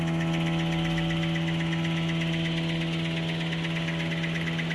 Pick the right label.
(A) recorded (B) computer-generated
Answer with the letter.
A